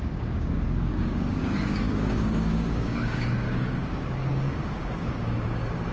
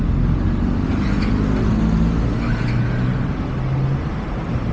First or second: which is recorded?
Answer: second